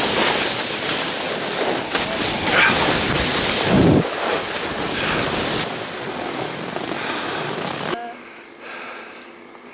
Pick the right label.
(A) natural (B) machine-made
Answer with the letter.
A